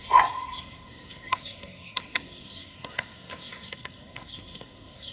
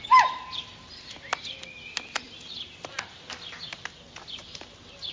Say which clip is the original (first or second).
second